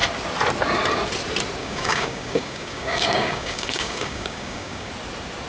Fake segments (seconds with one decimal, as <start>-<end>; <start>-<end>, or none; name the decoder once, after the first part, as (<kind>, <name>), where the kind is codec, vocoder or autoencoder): 1.6-4.9 (codec, DAC)